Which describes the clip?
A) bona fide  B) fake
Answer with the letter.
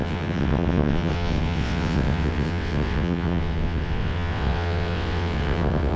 B